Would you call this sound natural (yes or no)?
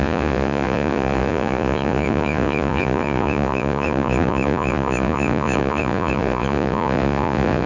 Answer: no